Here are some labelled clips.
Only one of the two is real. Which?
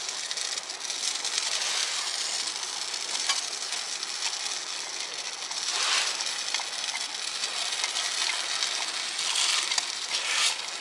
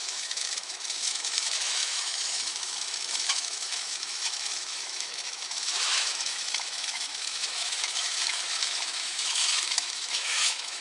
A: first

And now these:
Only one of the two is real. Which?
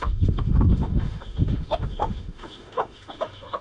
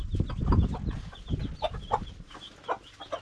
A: second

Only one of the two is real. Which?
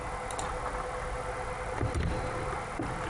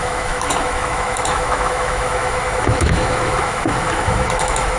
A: first